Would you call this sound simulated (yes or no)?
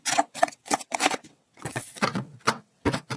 yes